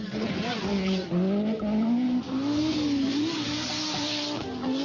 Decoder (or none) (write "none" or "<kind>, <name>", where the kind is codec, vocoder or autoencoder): none